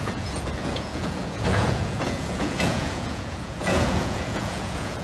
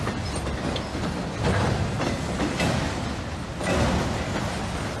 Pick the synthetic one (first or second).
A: first